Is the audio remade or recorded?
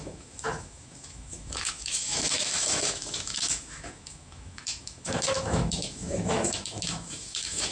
remade